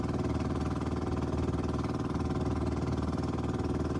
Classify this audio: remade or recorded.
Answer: recorded